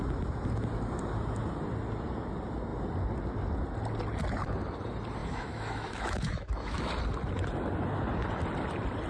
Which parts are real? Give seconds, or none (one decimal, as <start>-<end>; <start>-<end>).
0.0-5.2; 6.9-9.1